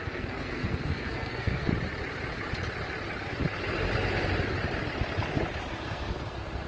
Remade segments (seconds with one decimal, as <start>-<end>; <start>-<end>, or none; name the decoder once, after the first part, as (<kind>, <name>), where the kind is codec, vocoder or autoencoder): 0.0-1.7 (codec, SNAC); 5.7-6.7